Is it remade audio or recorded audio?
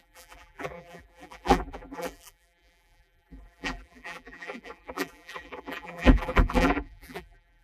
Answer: remade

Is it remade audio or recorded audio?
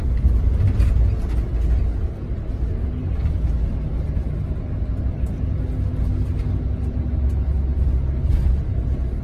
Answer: recorded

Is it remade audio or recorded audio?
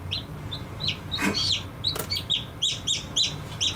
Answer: recorded